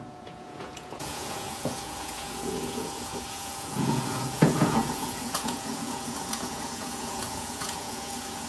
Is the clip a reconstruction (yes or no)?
yes